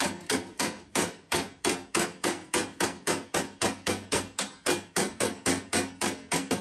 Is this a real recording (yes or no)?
no